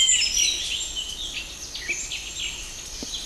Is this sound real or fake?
real